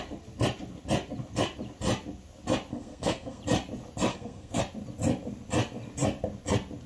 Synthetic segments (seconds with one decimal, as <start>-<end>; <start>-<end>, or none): 2.7-3.4; 4.1-4.6